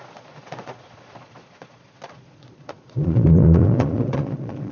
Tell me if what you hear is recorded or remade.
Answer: remade